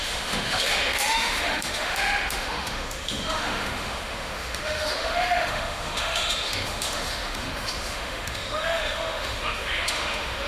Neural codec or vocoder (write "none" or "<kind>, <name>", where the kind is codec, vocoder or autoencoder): autoencoder, DAC-VAE